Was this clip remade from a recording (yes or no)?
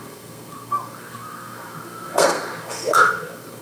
yes